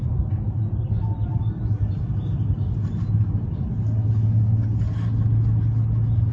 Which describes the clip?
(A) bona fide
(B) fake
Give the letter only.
A